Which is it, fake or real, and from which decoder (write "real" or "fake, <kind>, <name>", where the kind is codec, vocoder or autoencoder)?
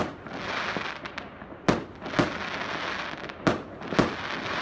real